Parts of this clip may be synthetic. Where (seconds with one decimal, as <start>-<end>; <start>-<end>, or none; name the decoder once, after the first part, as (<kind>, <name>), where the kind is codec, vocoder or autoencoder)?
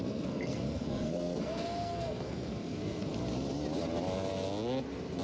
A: 0.0-3.1 (codec, SNAC)